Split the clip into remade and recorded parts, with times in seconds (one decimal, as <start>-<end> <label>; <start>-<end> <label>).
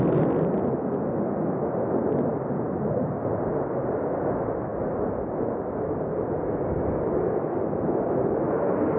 0.0-9.0 recorded